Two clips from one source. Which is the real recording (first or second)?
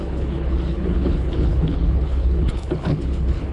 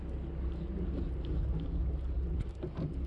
second